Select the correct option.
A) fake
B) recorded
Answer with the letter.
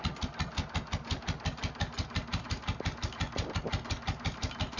B